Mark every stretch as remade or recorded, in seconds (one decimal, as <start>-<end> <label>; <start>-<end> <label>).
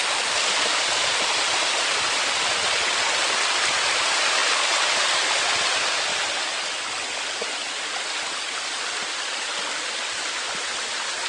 0.0-11.3 recorded